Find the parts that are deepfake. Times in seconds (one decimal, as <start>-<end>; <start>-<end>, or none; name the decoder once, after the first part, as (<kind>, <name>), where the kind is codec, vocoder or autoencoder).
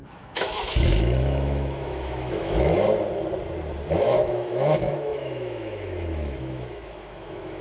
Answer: 0.0-2.7 (autoencoder, DAC-VAE); 4.0-7.6